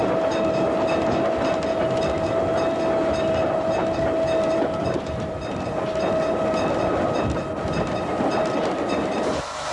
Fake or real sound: real